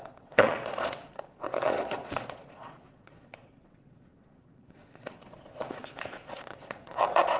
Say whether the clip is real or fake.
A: fake